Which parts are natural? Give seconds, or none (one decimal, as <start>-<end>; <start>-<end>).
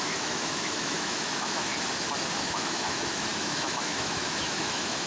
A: 1.7-2.4